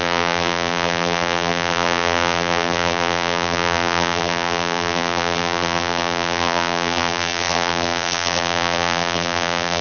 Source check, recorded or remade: remade